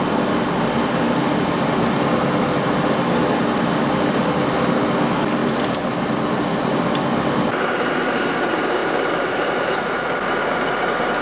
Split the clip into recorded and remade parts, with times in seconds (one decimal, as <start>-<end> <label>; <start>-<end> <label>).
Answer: 0.0-5.4 recorded; 5.4-6.0 remade; 6.0-8.8 recorded; 8.8-10.3 remade; 10.3-11.2 recorded